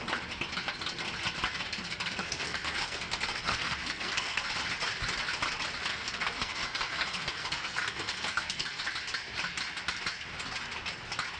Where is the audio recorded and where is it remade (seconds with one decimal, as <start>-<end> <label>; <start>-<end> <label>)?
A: 0.0-1.5 recorded; 1.5-4.5 remade; 4.5-5.9 recorded; 5.9-8.8 remade; 8.8-11.4 recorded